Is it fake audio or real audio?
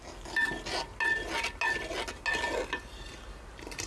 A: real